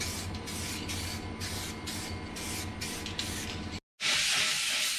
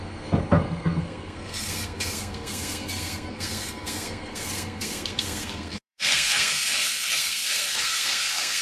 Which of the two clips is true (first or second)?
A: first